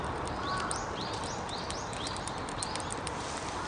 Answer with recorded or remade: recorded